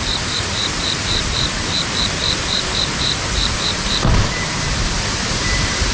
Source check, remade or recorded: remade